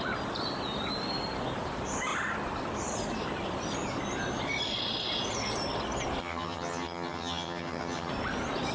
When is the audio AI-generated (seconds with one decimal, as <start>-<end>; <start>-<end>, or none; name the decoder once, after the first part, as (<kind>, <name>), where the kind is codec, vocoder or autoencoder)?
6.2-8.1 (vocoder, HiFi-GAN)